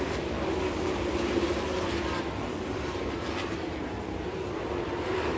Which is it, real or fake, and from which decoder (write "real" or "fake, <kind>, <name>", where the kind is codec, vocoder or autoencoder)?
fake, vocoder, BigVGAN v2